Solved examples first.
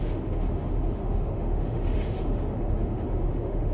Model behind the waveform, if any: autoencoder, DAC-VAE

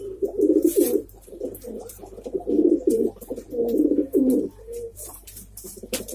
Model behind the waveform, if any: vocoder, BigVGAN v2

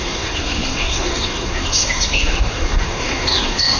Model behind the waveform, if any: codec, SNAC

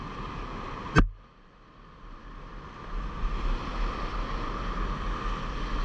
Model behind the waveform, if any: none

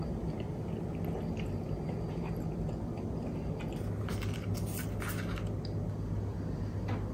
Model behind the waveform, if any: none